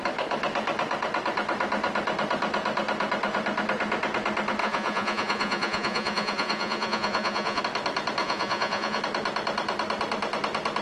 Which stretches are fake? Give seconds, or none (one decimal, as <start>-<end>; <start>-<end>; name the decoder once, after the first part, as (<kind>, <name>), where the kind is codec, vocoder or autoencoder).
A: 4.6-7.6 (vocoder, Vocos); 8.2-9.0